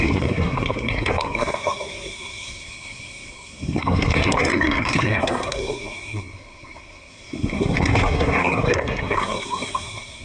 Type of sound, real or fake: fake